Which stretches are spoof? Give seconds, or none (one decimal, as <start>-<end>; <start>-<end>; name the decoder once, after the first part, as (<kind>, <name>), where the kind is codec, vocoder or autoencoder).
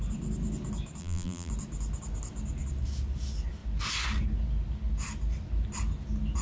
1.0-1.5 (vocoder, BigVGAN v2)